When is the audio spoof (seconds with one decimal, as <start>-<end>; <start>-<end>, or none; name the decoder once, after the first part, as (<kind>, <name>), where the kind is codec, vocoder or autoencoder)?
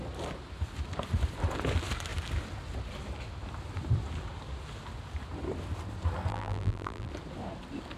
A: 6.3-7.1 (vocoder, BigVGAN v2)